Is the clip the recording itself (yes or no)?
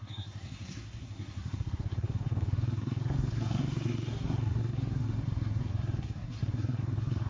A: no